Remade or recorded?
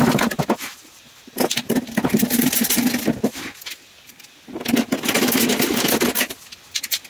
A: recorded